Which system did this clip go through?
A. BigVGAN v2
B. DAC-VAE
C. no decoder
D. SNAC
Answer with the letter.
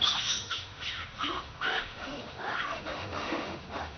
B